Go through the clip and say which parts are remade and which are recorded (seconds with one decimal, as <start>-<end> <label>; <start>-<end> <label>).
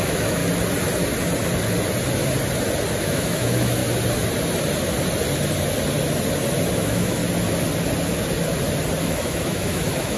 0.0-0.4 remade; 0.4-3.0 recorded; 3.0-3.8 remade; 3.8-6.7 recorded; 6.7-7.2 remade; 7.2-9.0 recorded; 9.0-10.2 remade